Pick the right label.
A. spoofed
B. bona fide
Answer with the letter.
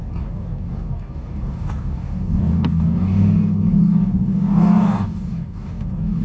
A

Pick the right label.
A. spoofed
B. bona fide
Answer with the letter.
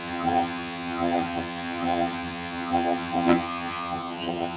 A